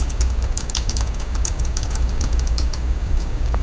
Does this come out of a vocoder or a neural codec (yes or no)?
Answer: yes